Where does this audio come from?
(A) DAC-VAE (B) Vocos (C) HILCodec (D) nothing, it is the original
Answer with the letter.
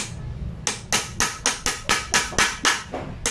D